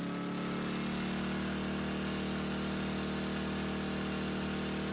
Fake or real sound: real